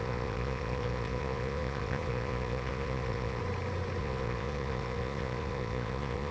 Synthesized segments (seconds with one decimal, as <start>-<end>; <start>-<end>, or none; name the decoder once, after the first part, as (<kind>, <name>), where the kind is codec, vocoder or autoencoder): 0.0-3.4 (vocoder, Vocos); 4.0-6.3